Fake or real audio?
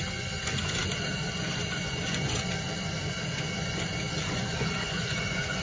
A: fake